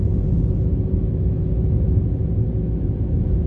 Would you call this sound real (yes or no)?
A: no